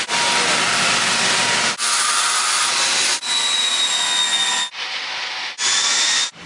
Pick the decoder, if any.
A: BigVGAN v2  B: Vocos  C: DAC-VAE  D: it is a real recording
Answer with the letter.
D